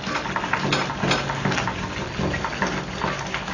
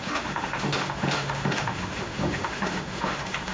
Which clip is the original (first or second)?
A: first